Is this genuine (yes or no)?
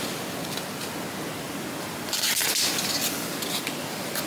yes